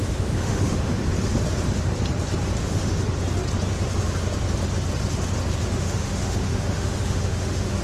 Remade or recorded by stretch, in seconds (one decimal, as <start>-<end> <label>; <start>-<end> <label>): 0.0-1.0 remade; 1.0-2.6 recorded; 2.6-3.0 remade; 3.0-5.6 recorded; 5.6-7.8 remade